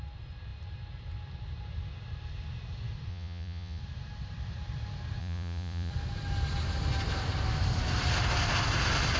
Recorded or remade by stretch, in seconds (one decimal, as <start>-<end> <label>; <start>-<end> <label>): 0.0-3.1 recorded; 3.1-3.8 remade; 3.8-5.2 recorded; 5.2-5.9 remade; 5.9-9.2 recorded